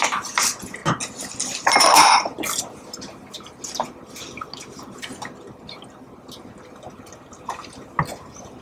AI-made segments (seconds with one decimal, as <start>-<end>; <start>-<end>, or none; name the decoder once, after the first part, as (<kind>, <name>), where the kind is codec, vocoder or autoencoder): none

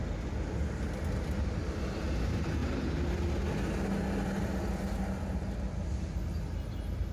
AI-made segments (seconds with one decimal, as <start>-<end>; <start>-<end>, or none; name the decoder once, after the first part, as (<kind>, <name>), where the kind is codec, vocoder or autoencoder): none

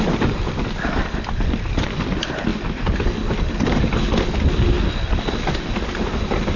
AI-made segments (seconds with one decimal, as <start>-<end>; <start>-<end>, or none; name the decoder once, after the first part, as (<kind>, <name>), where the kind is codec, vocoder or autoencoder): none

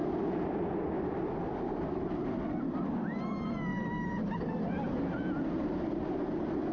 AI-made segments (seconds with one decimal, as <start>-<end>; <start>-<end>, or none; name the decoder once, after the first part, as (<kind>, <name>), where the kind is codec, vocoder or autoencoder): 0.0-2.6 (vocoder, BigVGAN v2); 3.7-4.7

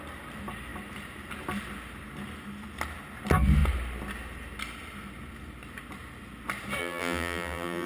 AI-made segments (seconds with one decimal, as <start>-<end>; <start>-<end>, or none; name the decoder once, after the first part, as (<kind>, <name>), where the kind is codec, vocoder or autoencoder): 6.8-7.9 (vocoder, BigVGAN v2)

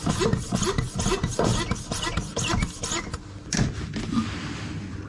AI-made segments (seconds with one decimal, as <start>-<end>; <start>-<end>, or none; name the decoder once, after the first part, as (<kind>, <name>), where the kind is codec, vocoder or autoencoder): none

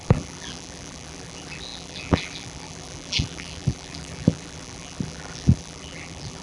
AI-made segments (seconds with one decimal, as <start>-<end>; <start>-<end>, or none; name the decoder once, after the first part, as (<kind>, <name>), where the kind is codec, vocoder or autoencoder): 0.0-6.4 (vocoder, BigVGAN v2)

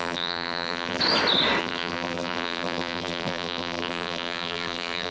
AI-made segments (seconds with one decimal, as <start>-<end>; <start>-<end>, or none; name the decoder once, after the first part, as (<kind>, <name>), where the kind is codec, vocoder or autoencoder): 0.0-1.0 (vocoder, BigVGAN v2); 1.6-5.1